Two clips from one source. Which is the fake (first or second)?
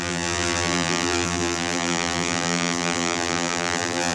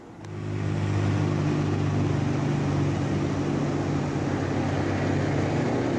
first